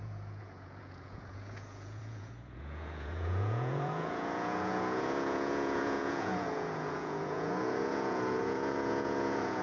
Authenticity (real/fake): fake